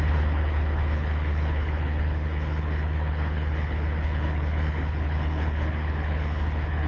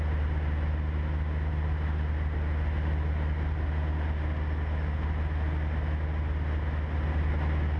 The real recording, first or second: second